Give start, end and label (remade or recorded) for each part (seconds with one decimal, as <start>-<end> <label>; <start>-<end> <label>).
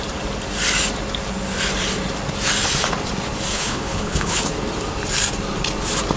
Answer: 0.0-3.5 recorded; 3.5-4.4 remade; 4.4-6.2 recorded